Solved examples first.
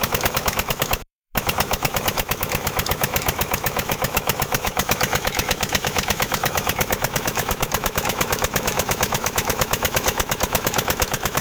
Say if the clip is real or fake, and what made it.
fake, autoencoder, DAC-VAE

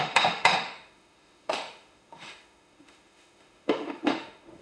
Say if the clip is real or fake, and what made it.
fake, autoencoder, DAC-VAE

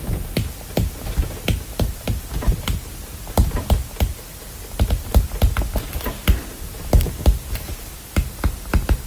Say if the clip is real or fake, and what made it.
real